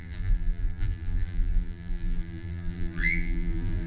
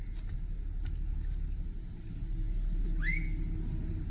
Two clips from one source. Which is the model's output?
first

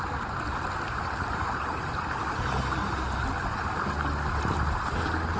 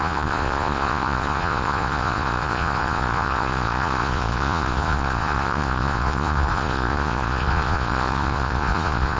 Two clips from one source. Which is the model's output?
second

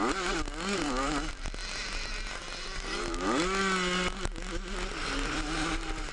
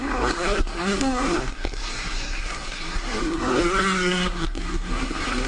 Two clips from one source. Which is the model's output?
second